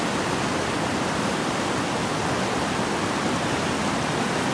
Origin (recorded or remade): recorded